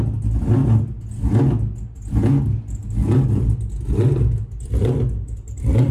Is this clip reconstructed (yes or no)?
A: no